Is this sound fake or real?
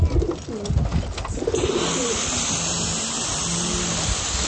real